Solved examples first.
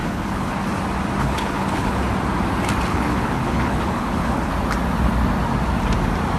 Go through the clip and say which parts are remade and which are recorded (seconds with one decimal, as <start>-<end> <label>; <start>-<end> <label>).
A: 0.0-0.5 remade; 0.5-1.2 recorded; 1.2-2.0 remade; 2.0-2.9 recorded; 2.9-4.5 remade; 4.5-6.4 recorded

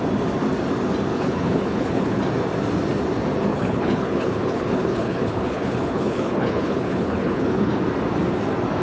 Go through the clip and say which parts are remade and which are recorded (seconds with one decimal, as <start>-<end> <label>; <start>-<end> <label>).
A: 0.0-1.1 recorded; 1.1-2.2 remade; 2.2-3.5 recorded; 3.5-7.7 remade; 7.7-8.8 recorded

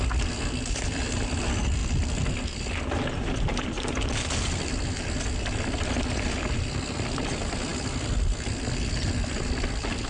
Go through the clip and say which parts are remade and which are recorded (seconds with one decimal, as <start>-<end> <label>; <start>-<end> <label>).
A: 0.0-10.1 recorded

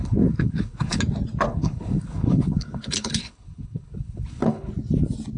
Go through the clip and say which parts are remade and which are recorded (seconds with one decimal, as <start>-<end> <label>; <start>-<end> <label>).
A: 0.0-1.0 remade; 1.0-1.5 recorded; 1.5-4.7 remade; 4.7-5.4 recorded